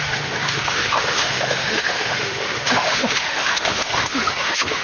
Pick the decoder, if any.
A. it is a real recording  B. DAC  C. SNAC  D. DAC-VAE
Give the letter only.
D